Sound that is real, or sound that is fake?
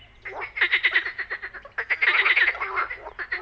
real